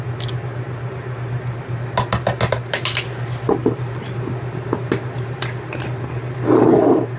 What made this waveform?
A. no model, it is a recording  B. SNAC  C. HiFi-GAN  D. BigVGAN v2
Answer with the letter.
A